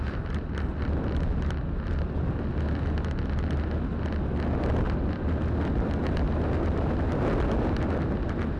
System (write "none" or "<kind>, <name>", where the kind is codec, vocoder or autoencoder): none